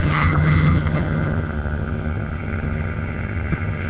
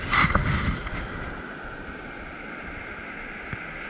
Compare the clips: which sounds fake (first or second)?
first